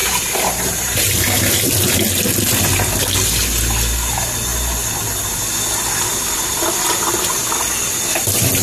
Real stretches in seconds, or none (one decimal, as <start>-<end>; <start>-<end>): 1.4-8.6